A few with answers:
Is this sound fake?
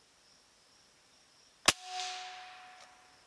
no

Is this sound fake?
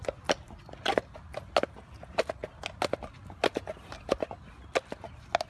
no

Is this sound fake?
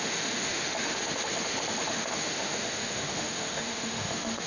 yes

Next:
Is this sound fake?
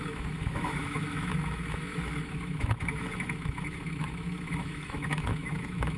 yes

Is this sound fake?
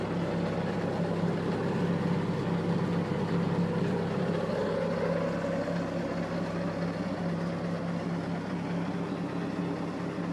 no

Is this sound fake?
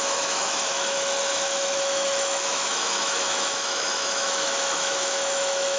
yes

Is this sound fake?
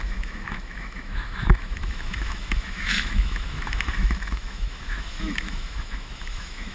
yes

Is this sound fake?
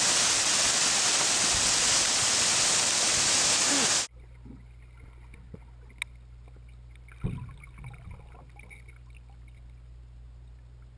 no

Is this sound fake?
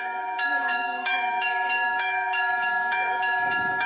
yes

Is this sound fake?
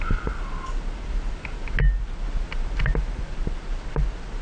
no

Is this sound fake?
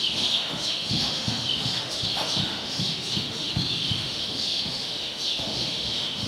yes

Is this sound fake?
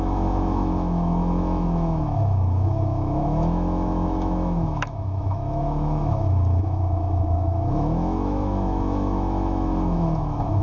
yes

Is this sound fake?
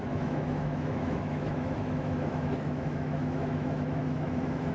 yes